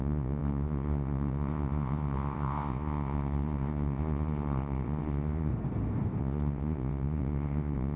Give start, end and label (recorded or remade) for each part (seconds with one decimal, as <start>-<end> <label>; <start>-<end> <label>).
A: 0.0-5.5 remade; 5.5-6.2 recorded; 6.2-8.0 remade

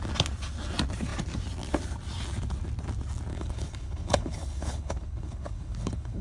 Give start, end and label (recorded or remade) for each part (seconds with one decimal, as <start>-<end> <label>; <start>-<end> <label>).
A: 0.0-3.3 recorded; 3.3-6.2 remade